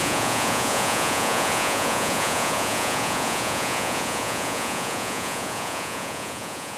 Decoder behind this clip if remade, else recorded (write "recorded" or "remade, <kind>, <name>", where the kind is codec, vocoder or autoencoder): remade, vocoder, Vocos